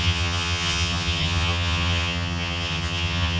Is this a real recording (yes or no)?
no